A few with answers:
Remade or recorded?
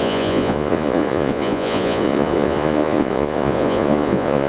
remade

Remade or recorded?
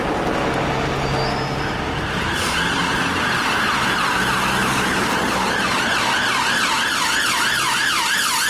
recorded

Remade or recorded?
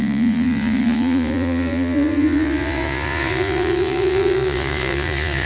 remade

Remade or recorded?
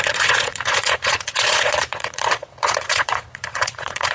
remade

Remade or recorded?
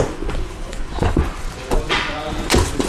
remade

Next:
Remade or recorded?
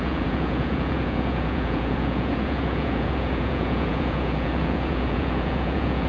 remade